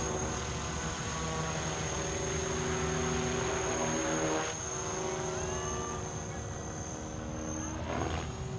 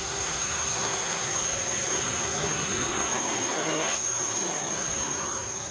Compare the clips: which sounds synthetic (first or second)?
second